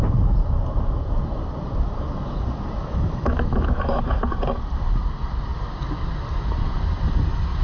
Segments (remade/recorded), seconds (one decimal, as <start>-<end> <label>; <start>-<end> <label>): 0.0-2.8 recorded; 2.8-3.8 remade; 3.8-7.6 recorded